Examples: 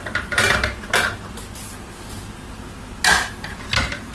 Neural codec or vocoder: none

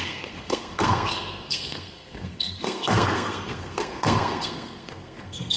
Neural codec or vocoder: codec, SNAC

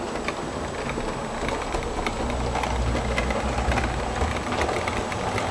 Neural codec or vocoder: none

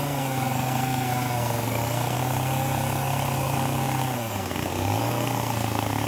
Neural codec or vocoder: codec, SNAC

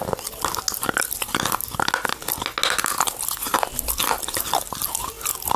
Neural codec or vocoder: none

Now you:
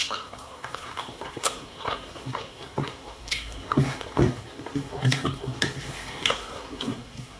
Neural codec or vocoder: codec, SNAC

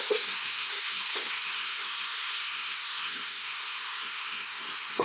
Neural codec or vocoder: codec, SNAC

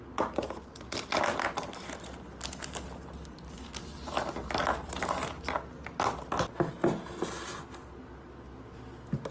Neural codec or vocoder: none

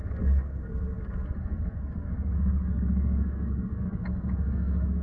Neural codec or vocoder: codec, SNAC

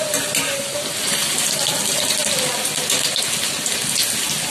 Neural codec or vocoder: none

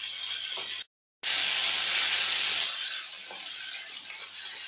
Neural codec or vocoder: none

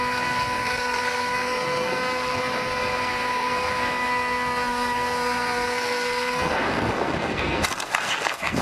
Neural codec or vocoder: codec, SNAC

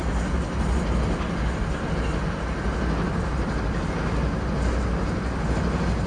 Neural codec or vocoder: none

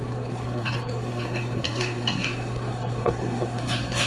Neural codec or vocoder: codec, SNAC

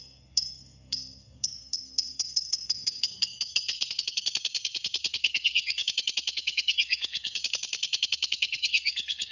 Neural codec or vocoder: codec, SNAC